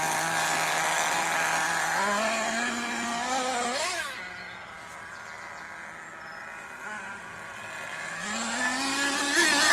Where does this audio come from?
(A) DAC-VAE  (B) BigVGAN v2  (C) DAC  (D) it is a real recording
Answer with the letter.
D